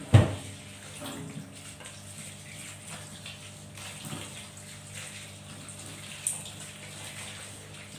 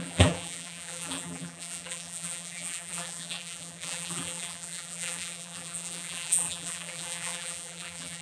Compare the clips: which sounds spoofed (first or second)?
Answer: second